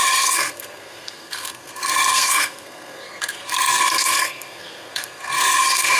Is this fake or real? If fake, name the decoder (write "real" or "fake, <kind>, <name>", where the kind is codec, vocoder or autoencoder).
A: fake, codec, SNAC